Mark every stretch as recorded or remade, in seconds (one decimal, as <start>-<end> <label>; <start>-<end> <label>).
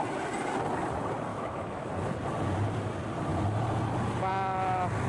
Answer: 0.0-1.3 recorded; 1.3-1.9 remade; 1.9-5.1 recorded